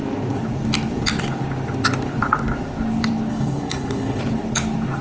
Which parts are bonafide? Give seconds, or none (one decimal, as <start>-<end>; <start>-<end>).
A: 0.0-3.3; 4.2-5.0